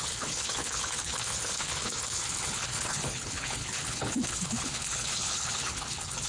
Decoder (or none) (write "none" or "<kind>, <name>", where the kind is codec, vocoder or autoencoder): codec, HILCodec